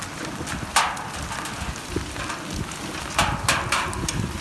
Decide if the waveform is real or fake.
real